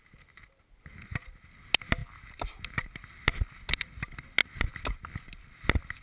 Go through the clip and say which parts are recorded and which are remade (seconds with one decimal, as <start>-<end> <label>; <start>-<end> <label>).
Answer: 0.0-6.0 recorded